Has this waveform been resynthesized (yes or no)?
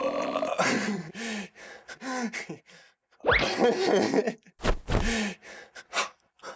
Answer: no